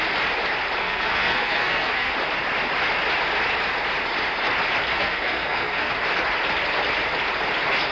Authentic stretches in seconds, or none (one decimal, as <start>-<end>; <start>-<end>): 0.0-0.8; 2.1-4.9; 5.9-7.9